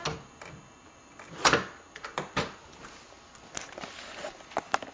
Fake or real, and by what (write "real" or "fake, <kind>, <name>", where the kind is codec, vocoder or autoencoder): real